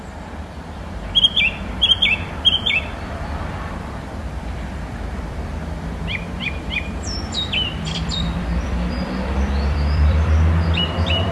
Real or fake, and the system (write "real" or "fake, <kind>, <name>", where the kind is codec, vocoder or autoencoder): fake, vocoder, BigVGAN v2